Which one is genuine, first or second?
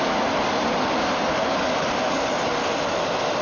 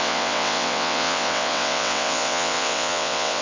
first